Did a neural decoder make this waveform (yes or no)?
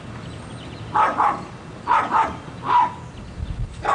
no